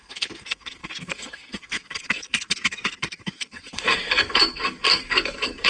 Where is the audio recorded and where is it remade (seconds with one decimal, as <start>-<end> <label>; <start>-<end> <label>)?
0.0-5.7 remade